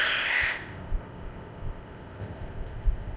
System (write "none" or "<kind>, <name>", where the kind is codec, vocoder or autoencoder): codec, ZipCodec